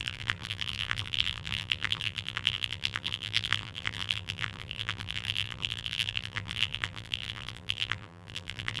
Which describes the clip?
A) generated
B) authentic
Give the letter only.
A